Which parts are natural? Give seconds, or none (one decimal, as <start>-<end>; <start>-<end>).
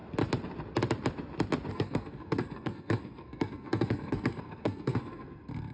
0.0-1.7